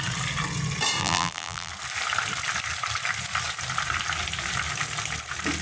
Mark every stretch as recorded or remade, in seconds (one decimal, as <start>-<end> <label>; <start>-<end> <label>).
0.0-1.0 recorded; 1.0-1.7 remade; 1.7-5.6 recorded